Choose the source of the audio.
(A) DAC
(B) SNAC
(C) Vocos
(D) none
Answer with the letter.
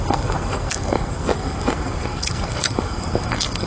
B